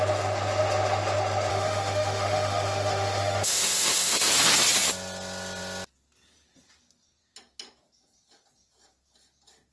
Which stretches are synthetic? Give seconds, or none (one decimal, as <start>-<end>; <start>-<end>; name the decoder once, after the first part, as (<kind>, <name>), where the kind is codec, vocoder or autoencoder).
1.5-4.3 (autoencoder, DAC-VAE)